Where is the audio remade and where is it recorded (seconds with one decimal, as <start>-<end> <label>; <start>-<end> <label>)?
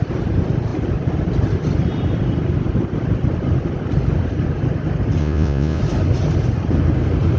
0.0-5.2 recorded; 5.2-5.8 remade; 5.8-7.4 recorded